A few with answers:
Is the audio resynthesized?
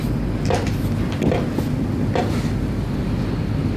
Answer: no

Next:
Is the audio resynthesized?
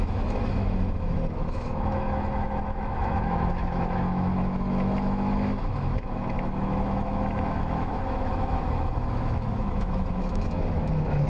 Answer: yes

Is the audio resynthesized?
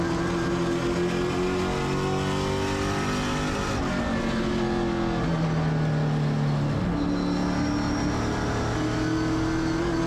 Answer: no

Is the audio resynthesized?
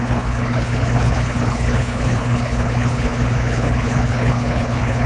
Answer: yes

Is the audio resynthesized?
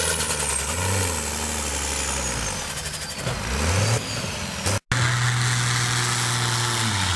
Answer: no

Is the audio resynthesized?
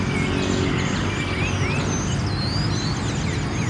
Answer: no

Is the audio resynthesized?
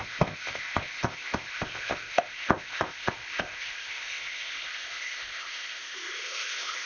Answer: yes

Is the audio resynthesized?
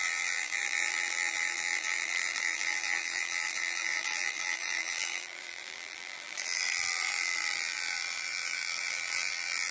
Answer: yes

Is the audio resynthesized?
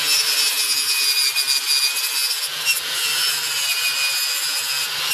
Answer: no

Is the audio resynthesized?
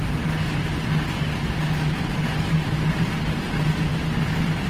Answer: no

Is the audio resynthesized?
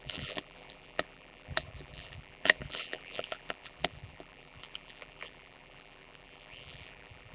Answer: yes